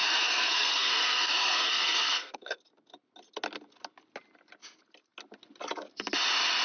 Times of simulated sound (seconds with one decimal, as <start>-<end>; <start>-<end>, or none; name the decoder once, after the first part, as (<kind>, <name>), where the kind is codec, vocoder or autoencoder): 0.0-2.6 (codec, SNAC)

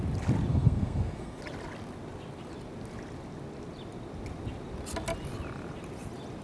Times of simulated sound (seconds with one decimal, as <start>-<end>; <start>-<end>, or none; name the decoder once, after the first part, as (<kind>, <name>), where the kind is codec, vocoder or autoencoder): 0.5-1.4 (codec, SNAC)

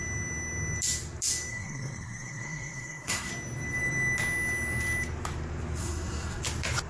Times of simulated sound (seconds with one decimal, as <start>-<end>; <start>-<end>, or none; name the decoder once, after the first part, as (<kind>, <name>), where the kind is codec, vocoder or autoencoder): 1.5-3.3 (codec, SNAC); 5.8-6.4

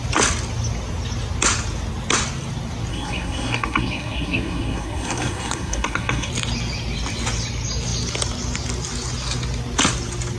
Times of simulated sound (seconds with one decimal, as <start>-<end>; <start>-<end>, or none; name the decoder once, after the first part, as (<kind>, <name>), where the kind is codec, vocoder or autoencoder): 2.9-6.3 (codec, SNAC)